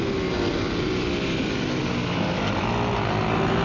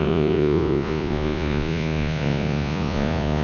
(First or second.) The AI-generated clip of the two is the second